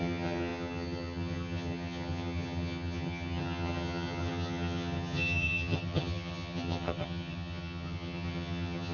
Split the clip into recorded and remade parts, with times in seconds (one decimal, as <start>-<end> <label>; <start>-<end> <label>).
0.0-8.9 remade